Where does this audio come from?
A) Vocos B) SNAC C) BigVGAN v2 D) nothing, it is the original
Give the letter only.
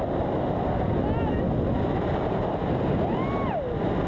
D